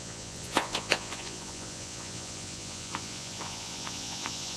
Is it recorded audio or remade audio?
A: remade